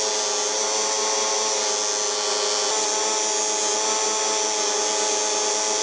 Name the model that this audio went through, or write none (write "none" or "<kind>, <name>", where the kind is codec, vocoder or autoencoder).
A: none